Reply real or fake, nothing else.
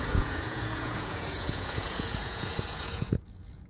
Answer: fake